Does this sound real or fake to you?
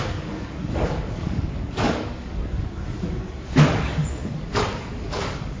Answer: fake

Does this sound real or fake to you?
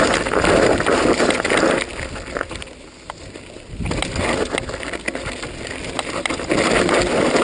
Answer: real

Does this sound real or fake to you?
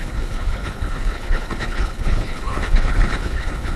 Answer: fake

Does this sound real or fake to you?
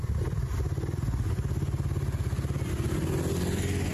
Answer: real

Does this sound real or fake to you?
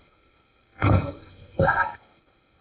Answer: fake